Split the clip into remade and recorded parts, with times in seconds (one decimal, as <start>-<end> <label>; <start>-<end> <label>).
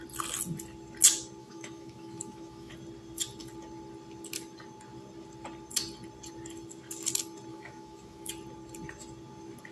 0.0-1.4 recorded; 1.4-2.7 remade; 2.7-7.5 recorded; 7.5-8.3 remade; 8.3-9.7 recorded